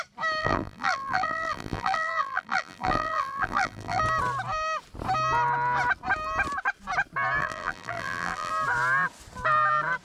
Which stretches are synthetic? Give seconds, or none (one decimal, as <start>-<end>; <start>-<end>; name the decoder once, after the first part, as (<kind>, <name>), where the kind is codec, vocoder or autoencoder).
0.4-4.0 (vocoder, BigVGAN v2); 7.4-8.5